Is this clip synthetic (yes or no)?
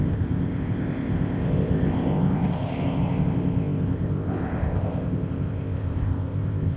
yes